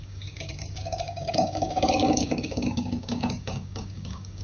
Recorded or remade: remade